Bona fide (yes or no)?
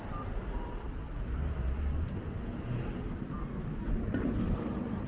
yes